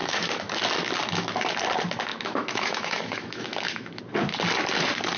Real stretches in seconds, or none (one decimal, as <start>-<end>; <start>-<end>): 0.6-2.1; 4.0-5.2